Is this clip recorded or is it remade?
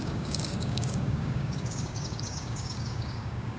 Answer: remade